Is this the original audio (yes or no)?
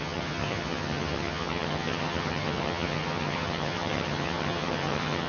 no